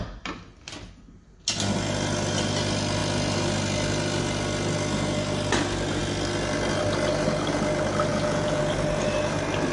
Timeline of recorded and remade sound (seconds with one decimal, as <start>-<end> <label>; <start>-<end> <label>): 0.0-8.1 recorded; 8.1-8.6 remade; 8.6-9.7 recorded